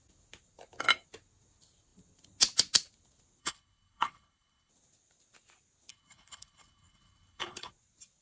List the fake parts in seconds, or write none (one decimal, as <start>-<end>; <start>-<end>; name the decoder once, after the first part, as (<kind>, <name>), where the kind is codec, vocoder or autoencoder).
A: 3.4-4.7 (codec, HILCodec); 5.9-7.7